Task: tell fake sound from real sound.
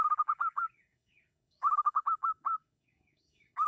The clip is fake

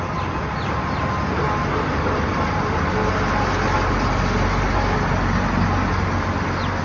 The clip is real